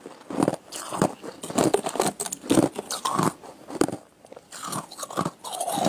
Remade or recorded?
recorded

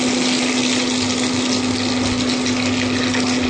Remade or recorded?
recorded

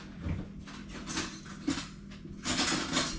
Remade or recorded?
recorded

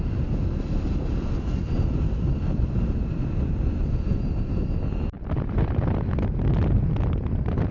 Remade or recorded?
recorded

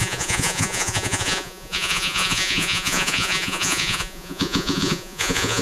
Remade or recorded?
remade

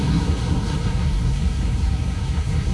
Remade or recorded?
remade